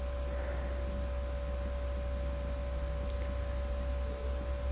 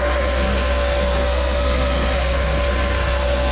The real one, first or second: first